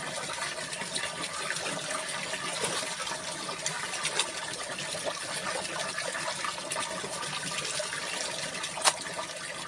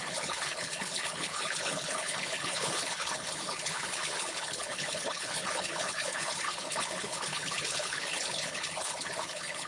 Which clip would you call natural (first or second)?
first